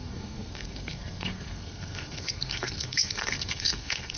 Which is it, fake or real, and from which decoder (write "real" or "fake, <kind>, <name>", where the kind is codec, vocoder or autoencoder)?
fake, codec, SNAC